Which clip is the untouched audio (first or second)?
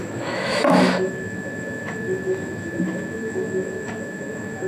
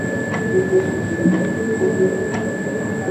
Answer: second